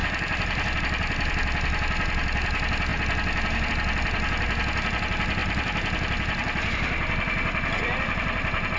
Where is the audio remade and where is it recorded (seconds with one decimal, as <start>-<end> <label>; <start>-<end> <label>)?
0.0-0.8 remade; 0.8-5.4 recorded; 5.4-8.8 remade